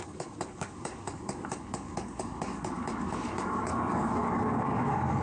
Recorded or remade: remade